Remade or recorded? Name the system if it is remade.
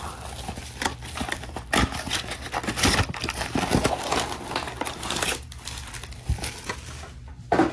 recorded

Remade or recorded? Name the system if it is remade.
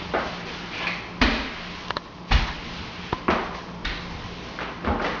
recorded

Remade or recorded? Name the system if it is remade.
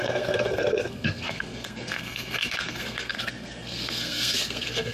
remade, codec, SNAC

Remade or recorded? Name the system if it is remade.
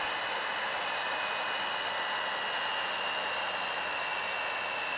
recorded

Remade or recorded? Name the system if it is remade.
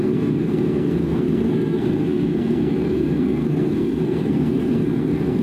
remade, codec, SNAC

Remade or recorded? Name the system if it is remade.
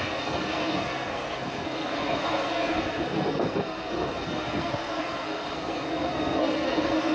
remade, codec, SNAC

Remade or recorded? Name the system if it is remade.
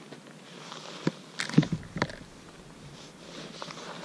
recorded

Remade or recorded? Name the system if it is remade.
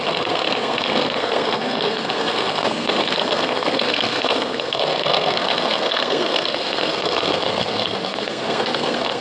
remade, codec, SNAC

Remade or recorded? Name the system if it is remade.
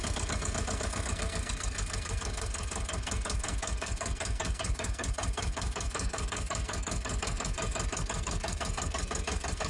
remade, codec, SNAC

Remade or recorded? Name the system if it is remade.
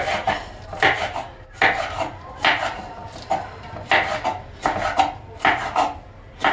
recorded